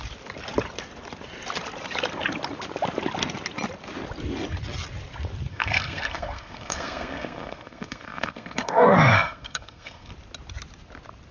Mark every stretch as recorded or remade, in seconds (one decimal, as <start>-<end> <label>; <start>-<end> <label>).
0.0-5.5 recorded; 5.5-10.1 remade; 10.1-11.3 recorded